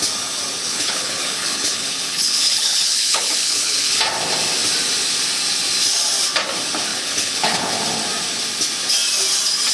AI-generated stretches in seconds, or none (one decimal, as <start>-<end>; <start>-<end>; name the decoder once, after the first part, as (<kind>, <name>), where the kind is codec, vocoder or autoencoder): 0.6-4.0 (codec, HILCodec); 6.9-7.8